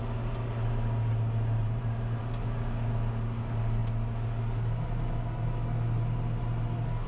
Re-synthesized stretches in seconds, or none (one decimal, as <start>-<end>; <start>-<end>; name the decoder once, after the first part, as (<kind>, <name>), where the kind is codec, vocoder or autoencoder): 1.6-2.2 (vocoder, BigVGAN v2)